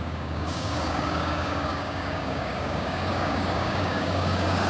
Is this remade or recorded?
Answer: remade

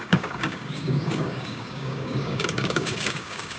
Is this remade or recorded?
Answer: remade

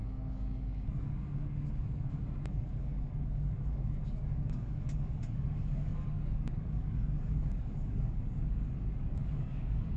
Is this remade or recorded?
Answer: remade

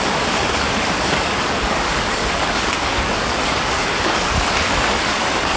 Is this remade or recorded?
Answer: remade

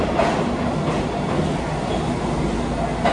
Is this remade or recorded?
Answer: recorded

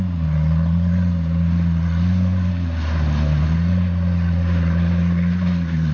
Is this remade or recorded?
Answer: recorded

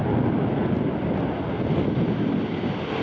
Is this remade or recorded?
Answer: recorded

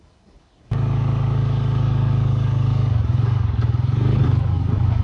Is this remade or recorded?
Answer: remade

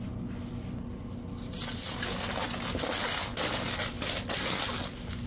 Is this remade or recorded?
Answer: recorded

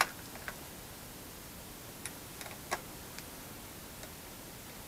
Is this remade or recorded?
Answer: recorded